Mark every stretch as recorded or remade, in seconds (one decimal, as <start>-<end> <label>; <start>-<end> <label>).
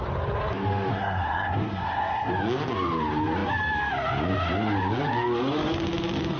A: 0.0-0.9 recorded; 0.9-2.3 remade; 2.3-6.4 recorded